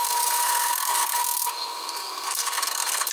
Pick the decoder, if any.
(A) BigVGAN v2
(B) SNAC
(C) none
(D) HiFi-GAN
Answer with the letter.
B